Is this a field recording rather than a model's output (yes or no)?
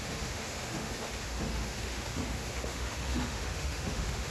no